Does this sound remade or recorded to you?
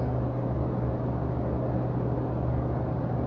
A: recorded